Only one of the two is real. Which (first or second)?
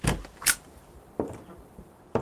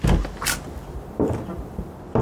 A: second